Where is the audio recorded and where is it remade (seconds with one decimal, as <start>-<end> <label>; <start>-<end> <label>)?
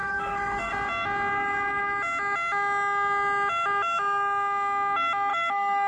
0.0-0.7 remade; 0.7-5.3 recorded; 5.3-5.9 remade